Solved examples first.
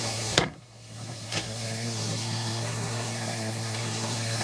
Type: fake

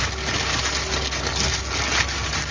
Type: real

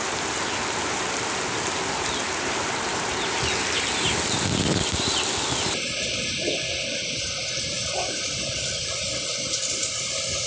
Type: real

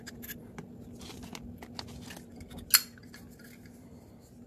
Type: real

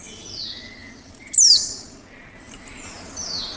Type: real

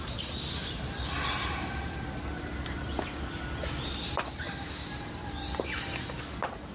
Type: real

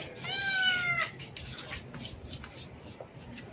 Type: real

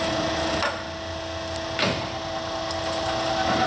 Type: real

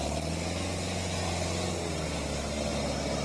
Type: real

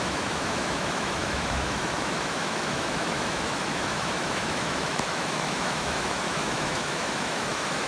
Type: fake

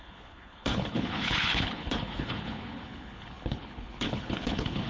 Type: fake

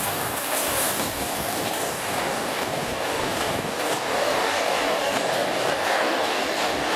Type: fake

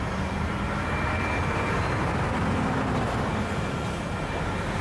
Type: real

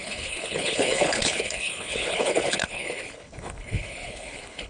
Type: fake